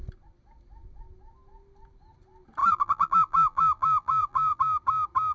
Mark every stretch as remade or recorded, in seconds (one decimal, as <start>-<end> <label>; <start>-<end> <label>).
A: 0.0-2.6 recorded; 2.6-4.6 remade; 4.6-5.3 recorded